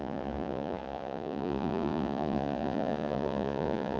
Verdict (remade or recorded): remade